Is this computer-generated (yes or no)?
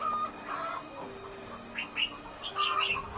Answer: no